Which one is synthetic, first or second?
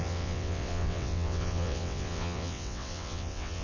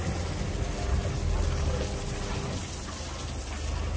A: first